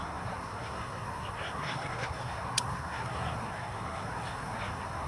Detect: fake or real fake